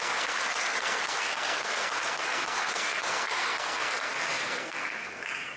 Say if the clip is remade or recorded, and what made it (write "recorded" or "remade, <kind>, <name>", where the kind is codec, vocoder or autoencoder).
remade, codec, SNAC